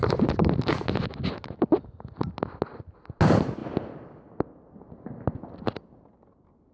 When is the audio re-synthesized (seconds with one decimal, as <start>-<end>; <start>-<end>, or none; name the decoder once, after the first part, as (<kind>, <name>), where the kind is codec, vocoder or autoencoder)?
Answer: none